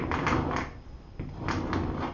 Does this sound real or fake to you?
real